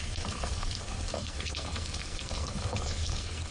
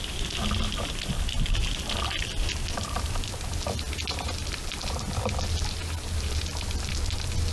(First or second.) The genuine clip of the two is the second